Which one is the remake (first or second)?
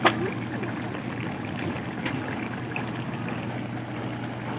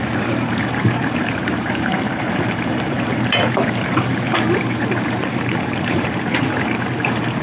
second